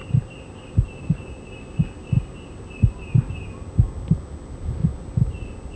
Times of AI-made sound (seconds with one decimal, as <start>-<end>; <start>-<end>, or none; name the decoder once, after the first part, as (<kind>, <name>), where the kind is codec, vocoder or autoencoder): none